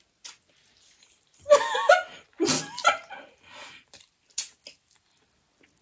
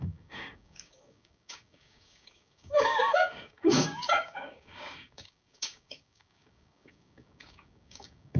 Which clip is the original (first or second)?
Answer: first